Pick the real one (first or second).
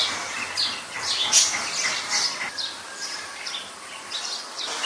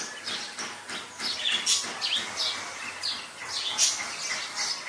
second